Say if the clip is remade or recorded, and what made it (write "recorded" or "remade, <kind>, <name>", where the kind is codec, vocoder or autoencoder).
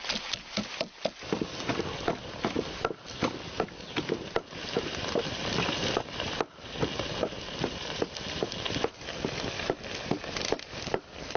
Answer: recorded